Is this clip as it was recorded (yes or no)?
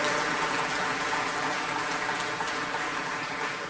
yes